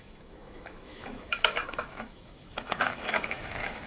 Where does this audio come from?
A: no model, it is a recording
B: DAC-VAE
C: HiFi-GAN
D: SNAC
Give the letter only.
B